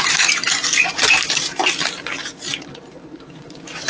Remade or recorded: remade